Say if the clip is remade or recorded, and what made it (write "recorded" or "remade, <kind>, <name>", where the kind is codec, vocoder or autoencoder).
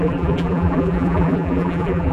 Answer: remade, vocoder, BigVGAN v2